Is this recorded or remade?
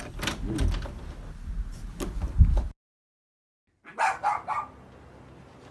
recorded